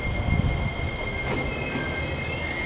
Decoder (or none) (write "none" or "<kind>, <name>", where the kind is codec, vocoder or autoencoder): none